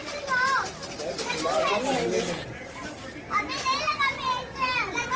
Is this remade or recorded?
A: recorded